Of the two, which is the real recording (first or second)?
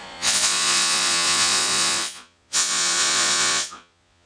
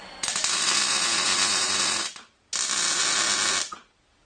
second